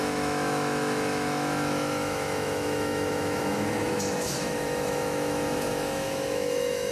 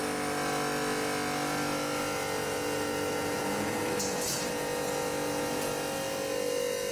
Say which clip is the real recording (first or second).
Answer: second